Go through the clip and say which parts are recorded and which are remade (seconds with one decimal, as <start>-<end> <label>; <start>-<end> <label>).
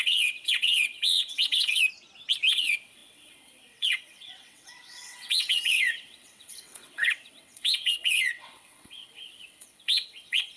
0.0-1.8 remade; 1.8-2.5 recorded; 2.5-10.6 remade